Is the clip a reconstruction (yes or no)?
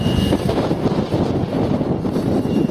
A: no